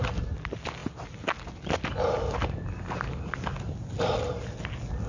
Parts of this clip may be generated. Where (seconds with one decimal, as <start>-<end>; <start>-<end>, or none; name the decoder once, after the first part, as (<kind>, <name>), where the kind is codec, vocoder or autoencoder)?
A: none